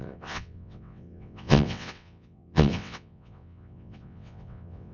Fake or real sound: fake